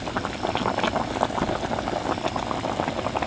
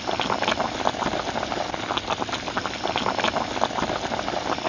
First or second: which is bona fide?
first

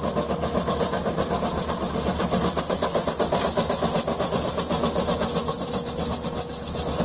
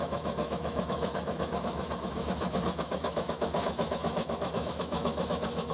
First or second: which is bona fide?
first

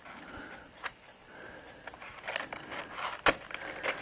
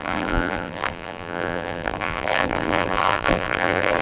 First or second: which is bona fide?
first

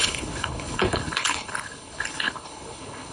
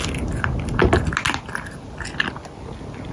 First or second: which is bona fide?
second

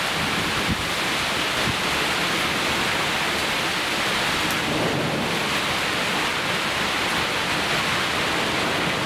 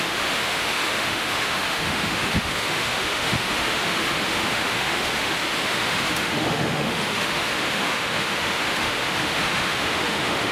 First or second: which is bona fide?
first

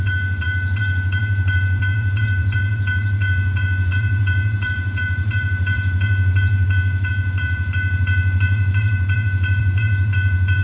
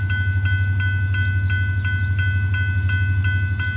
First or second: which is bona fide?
second